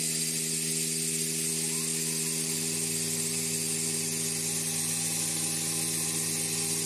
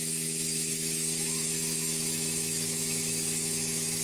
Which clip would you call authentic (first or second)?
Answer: first